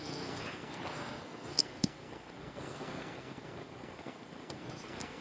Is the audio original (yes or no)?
no